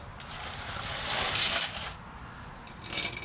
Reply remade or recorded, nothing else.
recorded